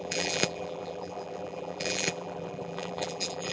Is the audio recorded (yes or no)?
no